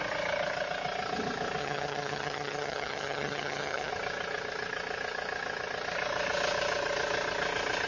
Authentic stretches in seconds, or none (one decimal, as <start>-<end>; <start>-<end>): 0.0-1.6; 3.9-7.9